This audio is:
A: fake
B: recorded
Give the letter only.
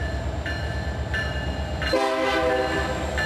B